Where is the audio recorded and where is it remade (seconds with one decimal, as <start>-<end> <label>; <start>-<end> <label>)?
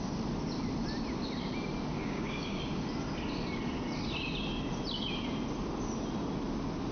0.0-2.0 recorded; 2.0-2.6 remade; 2.6-6.9 recorded